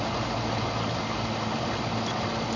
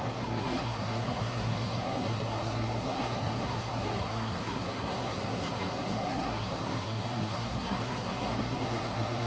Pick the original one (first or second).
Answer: first